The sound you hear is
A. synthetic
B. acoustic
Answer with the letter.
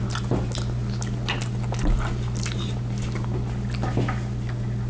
B